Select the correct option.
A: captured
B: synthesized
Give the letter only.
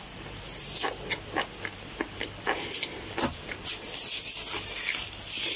A